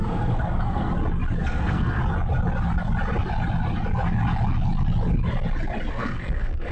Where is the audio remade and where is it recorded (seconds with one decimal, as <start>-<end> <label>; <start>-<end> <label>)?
0.0-0.9 remade; 0.9-1.4 recorded; 1.4-2.0 remade; 2.0-5.9 recorded; 5.9-6.7 remade